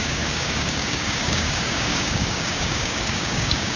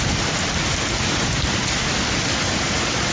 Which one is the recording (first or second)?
second